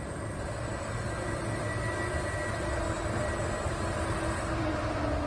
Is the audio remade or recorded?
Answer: recorded